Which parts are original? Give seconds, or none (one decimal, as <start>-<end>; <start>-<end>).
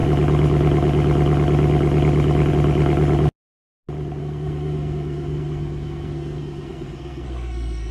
0.0-4.2